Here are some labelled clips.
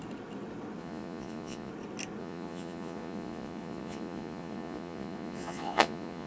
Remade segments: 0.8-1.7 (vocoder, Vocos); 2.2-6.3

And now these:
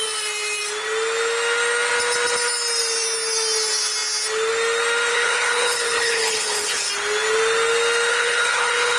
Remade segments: 5.1-6.9 (codec, HILCodec); 8.1-9.0